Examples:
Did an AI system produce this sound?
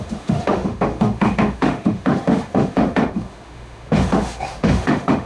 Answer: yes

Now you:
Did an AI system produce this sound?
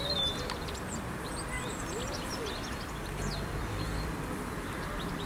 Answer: yes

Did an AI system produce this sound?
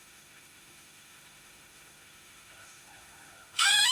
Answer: yes